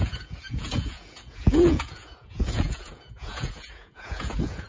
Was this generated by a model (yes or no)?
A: yes